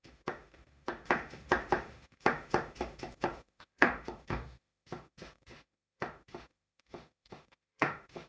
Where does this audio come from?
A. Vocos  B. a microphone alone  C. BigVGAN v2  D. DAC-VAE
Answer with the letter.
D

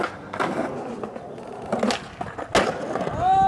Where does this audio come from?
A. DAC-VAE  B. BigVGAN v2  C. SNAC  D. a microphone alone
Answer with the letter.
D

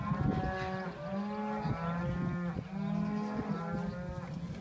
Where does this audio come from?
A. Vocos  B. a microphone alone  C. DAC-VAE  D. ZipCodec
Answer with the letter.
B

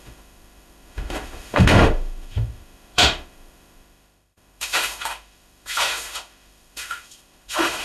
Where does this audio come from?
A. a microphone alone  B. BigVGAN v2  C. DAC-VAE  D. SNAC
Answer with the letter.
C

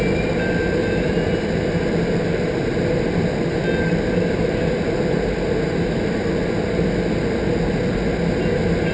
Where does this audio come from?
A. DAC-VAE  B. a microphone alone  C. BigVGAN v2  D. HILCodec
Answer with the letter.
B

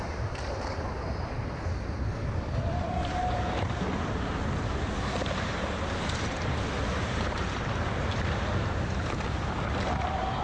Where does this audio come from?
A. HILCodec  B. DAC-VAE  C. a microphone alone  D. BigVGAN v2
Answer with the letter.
C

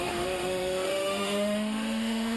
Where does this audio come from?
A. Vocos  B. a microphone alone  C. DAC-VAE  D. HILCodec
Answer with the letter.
C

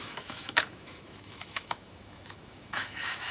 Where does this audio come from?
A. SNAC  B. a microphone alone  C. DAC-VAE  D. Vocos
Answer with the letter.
C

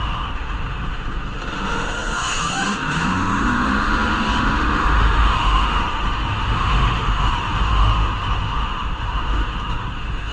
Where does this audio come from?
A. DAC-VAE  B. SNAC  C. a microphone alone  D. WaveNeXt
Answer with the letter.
A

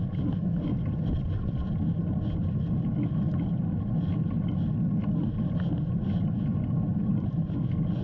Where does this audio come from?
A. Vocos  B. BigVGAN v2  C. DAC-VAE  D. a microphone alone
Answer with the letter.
D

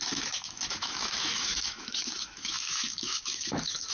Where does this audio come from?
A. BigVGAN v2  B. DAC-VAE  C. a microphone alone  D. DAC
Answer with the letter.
B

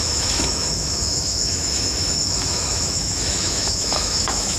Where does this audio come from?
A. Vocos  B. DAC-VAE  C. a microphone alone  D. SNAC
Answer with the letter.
B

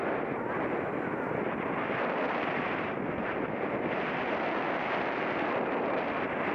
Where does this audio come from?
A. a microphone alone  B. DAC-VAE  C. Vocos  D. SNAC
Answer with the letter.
A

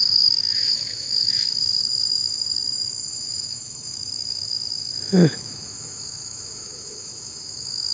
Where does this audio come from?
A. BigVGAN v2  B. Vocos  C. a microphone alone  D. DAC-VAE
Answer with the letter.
D